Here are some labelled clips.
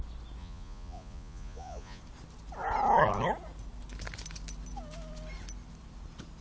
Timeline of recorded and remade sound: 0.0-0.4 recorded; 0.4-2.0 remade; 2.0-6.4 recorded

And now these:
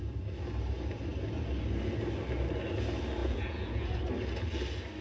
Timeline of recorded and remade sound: 0.0-3.2 recorded; 3.2-4.0 remade; 4.0-5.0 recorded

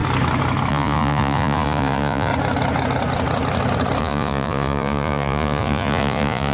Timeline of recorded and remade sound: 0.0-0.7 recorded; 0.7-2.3 remade; 2.3-4.0 recorded; 4.0-6.5 remade